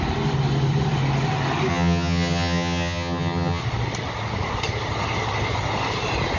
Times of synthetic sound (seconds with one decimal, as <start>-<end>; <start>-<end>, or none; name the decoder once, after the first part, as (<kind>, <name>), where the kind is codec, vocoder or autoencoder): 1.7-3.6 (vocoder, HiFi-GAN)

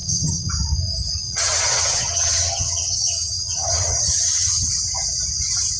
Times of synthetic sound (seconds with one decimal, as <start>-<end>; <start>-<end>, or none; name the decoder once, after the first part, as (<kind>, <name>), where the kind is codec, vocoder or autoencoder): 0.0-0.5 (vocoder, HiFi-GAN); 1.2-4.7

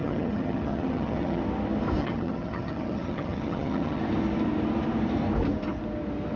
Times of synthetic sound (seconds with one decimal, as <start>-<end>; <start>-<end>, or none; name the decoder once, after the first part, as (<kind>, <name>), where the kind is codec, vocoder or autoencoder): 0.0-1.4 (vocoder, HiFi-GAN); 2.0-4.0

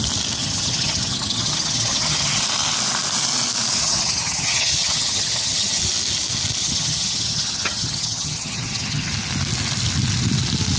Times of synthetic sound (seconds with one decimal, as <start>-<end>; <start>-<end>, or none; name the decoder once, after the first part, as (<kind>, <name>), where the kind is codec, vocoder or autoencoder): 0.4-2.4 (vocoder, HiFi-GAN); 3.8-5.8; 6.6-9.1

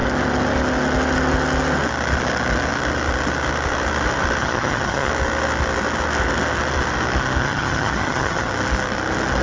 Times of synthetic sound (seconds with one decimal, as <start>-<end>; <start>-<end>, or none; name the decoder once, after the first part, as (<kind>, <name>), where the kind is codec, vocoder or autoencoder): 4.4-5.1 (vocoder, HiFi-GAN); 7.4-8.5

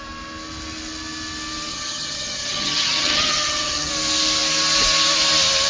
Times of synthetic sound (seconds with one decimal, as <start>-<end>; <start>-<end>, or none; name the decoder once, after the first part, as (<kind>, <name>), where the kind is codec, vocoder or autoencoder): 1.7-3.9 (vocoder, HiFi-GAN)